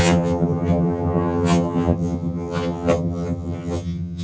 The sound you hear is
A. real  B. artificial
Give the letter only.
B